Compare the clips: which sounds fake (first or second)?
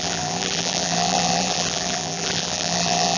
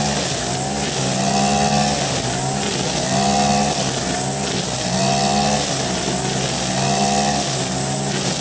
first